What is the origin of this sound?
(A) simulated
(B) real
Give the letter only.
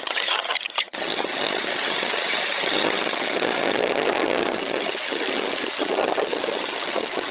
A